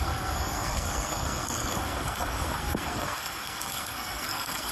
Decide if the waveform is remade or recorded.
remade